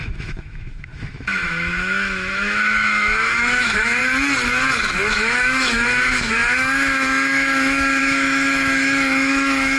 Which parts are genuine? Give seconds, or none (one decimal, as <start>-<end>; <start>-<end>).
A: 4.0-5.1